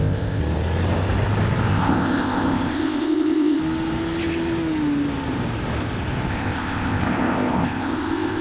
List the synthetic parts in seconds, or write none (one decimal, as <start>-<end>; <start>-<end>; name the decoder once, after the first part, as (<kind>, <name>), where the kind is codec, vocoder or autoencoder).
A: 0.0-0.4 (codec, ZipCodec); 1.7-3.6; 6.3-8.4